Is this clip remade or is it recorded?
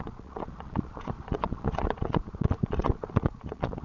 remade